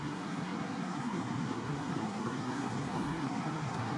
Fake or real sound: fake